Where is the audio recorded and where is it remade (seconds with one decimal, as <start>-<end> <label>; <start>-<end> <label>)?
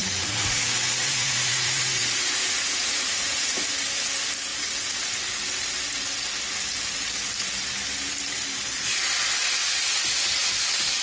0.0-3.5 remade; 3.5-9.6 recorded; 9.6-10.5 remade; 10.5-11.0 recorded